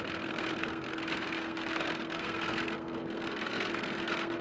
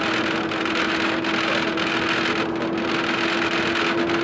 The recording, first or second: second